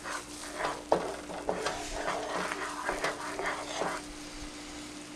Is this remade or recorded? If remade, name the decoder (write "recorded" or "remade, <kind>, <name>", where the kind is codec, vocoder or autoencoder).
recorded